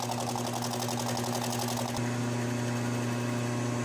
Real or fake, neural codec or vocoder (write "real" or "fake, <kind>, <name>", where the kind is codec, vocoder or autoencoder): real